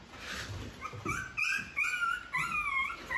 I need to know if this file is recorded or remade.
recorded